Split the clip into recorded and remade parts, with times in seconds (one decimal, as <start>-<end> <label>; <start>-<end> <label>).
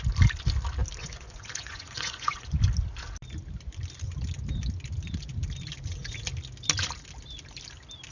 0.0-1.0 recorded; 1.0-2.6 remade; 2.6-8.1 recorded